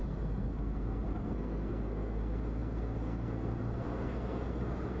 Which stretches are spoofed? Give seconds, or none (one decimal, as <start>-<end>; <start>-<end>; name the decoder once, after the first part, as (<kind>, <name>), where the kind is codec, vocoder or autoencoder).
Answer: 0.0-5.0 (codec, SNAC)